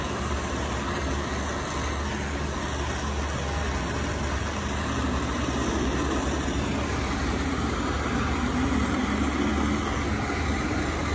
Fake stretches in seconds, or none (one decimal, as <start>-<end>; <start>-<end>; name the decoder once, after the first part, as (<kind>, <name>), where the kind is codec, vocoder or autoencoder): 0.0-1.0 (vocoder, BigVGAN v2); 4.6-9.5; 10.4-11.1